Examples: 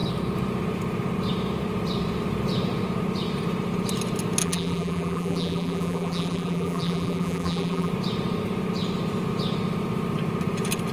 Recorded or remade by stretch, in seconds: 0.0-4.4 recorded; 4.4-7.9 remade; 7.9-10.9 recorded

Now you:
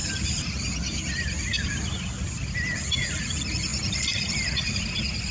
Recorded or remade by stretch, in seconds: 0.0-3.2 remade; 3.2-3.7 recorded; 3.7-4.3 remade; 4.3-5.3 recorded

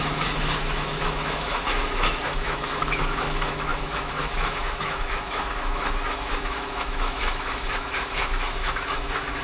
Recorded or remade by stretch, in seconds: 0.0-9.4 remade

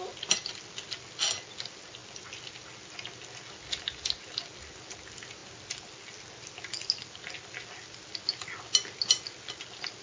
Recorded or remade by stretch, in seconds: 0.0-10.0 recorded

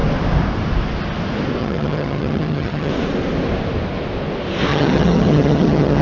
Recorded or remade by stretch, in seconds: 0.0-1.6 recorded; 1.6-2.9 remade; 2.9-4.7 recorded; 4.7-6.0 remade

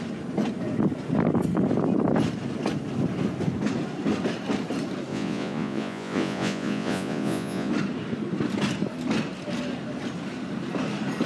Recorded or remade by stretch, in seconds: 0.0-5.1 recorded; 5.1-7.7 remade; 7.7-11.3 recorded

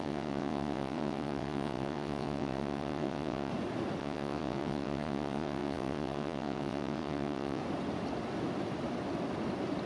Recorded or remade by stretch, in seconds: 0.0-3.5 remade; 3.5-4.0 recorded; 4.0-7.6 remade; 7.6-9.9 recorded